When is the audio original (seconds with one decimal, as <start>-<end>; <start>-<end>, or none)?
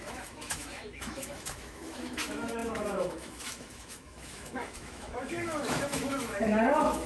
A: none